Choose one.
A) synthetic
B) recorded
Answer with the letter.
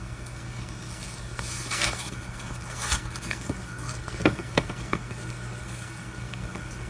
A